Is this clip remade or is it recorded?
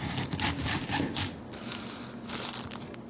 recorded